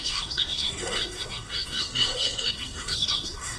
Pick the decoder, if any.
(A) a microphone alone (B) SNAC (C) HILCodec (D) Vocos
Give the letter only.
B